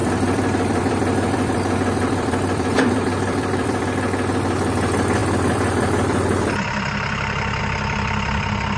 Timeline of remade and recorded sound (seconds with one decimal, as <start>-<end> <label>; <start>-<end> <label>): 0.0-3.8 remade; 3.8-5.2 recorded; 5.2-7.6 remade; 7.6-8.8 recorded

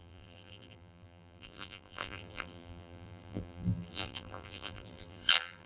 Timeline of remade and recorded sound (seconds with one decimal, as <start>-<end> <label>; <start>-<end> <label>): 0.0-5.7 remade